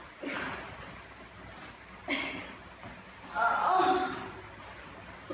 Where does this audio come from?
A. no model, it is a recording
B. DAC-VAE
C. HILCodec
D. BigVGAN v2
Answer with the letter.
A